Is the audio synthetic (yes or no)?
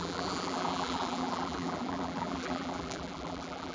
yes